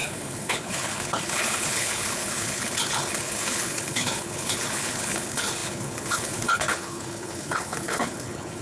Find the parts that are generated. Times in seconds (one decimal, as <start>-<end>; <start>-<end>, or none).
0.0-8.6